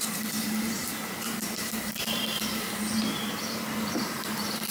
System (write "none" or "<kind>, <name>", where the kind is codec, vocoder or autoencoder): vocoder, BigVGAN v2